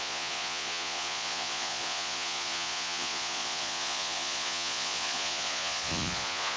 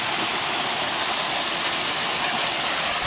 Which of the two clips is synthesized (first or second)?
first